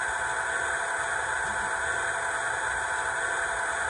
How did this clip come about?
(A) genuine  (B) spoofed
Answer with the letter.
A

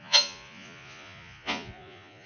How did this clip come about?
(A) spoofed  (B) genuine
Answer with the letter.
A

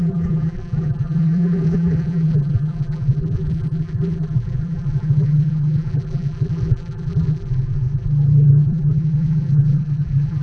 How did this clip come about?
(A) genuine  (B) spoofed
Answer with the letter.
B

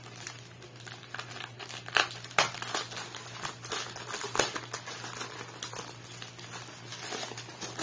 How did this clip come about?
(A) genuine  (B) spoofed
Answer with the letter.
A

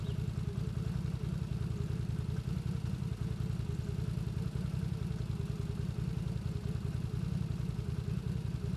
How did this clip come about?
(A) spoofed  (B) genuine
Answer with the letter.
B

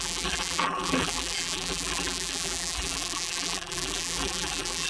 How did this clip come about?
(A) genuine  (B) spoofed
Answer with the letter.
B